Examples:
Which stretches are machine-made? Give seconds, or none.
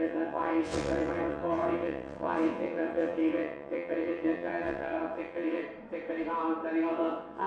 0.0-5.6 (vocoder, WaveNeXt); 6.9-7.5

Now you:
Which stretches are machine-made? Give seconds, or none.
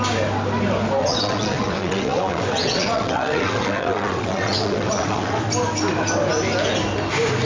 1.0-5.4 (vocoder, WaveNeXt)